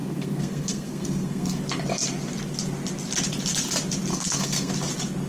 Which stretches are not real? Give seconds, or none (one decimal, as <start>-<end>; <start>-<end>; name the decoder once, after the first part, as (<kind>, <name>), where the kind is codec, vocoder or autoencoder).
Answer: 0.0-1.6 (codec, SNAC); 4.1-4.7